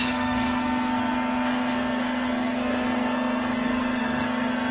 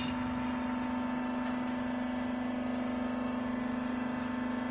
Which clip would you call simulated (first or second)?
first